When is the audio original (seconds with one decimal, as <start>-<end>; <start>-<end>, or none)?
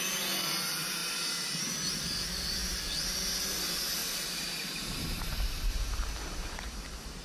0.0-1.0; 1.6-4.0